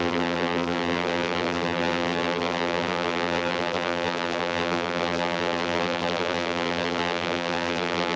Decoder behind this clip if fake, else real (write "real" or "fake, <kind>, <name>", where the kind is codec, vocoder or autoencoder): fake, vocoder, BigVGAN v2